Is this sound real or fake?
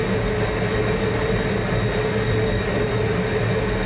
real